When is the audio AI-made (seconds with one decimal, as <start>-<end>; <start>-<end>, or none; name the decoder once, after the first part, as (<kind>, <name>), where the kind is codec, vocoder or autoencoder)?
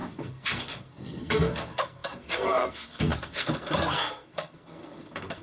0.0-5.4 (codec, SNAC)